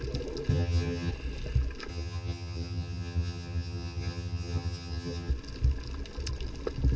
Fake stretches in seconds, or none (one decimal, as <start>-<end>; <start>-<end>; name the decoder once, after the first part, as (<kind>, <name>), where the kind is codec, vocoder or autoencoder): 0.5-1.1 (vocoder, HiFi-GAN); 1.9-5.3